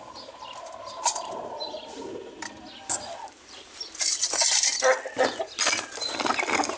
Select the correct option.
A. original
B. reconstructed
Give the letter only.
A